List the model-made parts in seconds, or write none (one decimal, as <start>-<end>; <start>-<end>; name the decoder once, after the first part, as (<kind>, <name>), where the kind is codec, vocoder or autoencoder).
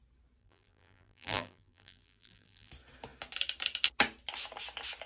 0.4-2.7 (vocoder, BigVGAN v2)